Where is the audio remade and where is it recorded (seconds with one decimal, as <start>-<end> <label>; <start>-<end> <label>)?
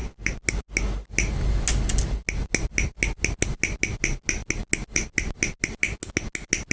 0.0-6.7 recorded